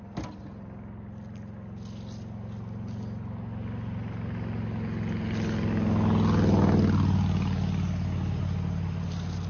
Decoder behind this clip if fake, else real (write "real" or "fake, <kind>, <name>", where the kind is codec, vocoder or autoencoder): real